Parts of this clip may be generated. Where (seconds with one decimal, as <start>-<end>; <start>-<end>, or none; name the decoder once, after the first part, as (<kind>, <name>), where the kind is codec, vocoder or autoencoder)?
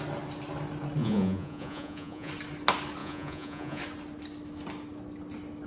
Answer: 1.0-2.3 (vocoder, Vocos); 3.0-3.8